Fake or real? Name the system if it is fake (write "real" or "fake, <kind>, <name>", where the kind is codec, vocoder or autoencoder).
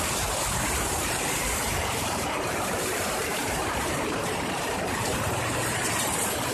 fake, vocoder, BigVGAN v2